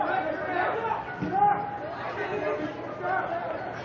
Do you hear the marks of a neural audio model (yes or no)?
no